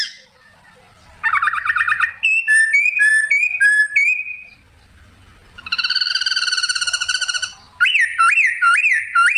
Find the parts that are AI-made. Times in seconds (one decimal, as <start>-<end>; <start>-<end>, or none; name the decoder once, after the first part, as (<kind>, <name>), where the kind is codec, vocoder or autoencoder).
none